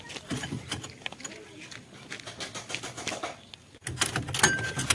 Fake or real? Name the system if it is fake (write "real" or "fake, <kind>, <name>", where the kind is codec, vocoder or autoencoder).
real